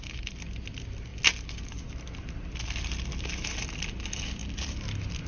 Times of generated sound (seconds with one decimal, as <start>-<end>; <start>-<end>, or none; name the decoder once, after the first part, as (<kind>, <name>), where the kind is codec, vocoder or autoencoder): none